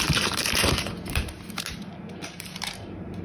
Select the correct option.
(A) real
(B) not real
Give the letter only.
B